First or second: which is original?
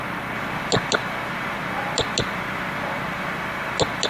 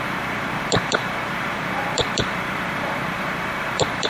first